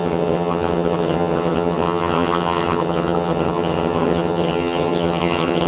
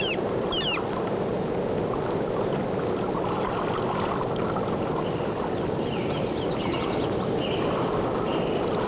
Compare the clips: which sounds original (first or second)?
second